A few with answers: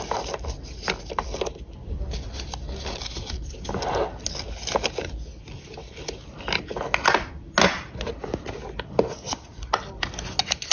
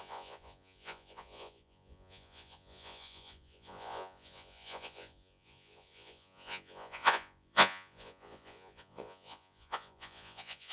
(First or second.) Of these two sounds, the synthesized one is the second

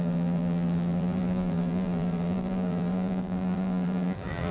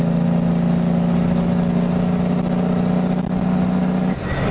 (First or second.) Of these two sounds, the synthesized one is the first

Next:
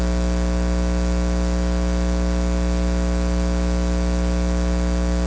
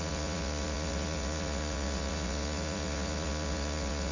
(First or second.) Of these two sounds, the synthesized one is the second